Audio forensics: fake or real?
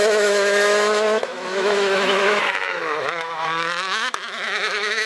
fake